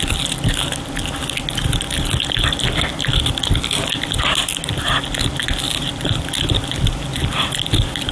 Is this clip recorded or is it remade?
recorded